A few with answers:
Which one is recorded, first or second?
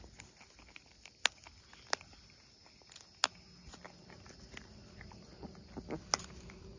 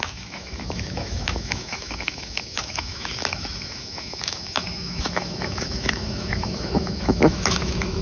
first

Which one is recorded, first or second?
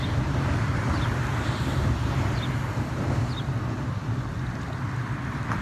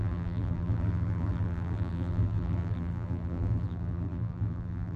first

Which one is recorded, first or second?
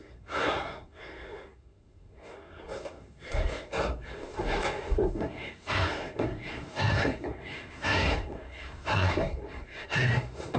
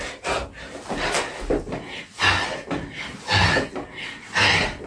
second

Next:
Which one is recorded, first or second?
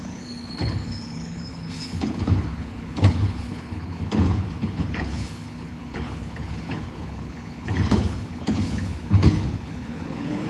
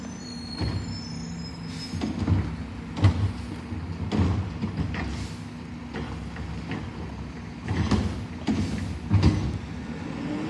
second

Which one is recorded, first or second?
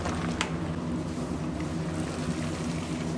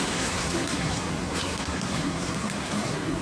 first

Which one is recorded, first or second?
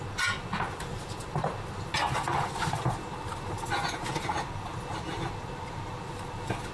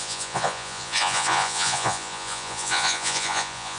first